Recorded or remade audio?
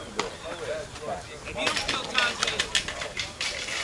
recorded